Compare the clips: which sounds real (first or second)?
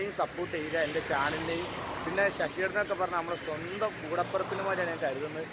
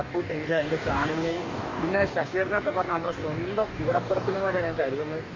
first